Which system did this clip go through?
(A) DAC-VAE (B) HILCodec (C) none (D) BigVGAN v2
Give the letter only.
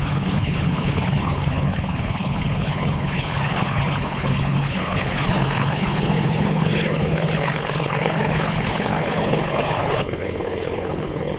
B